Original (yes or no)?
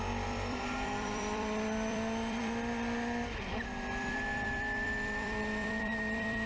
no